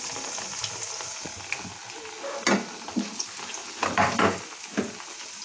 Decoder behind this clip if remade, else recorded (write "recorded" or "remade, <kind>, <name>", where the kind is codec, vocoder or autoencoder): recorded